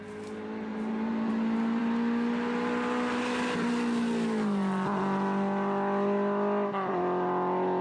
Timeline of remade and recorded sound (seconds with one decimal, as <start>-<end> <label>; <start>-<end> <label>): 0.0-0.7 recorded; 0.7-1.3 remade; 1.3-7.8 recorded

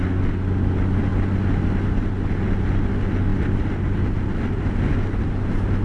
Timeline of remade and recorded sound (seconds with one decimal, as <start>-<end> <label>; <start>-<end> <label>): 0.0-3.3 recorded; 3.3-5.3 remade; 5.3-5.8 recorded

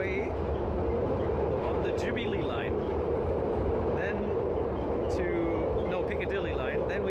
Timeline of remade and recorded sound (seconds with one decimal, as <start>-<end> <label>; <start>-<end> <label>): 0.0-1.0 recorded; 1.0-4.7 remade; 4.7-7.1 recorded

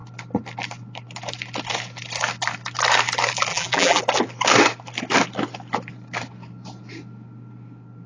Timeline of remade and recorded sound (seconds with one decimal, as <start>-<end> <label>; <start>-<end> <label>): 0.0-3.5 recorded; 3.5-4.0 remade; 4.0-8.1 recorded